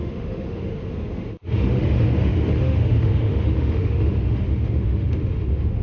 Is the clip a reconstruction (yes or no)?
yes